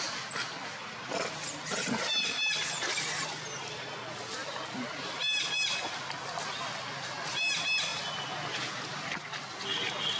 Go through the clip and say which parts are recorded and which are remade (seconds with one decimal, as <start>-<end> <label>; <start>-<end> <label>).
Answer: 0.0-10.2 recorded